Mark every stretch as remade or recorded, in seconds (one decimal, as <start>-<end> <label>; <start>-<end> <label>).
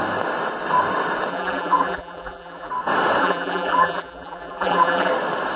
0.0-1.3 recorded; 1.3-2.7 remade; 2.7-3.2 recorded; 3.2-5.1 remade; 5.1-5.6 recorded